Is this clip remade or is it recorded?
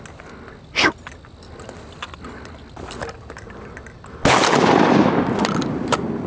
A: recorded